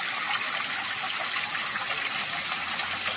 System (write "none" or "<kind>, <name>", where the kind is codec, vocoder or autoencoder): none